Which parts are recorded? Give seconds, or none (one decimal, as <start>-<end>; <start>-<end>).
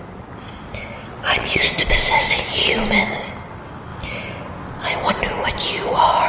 0.0-1.0; 1.9-6.3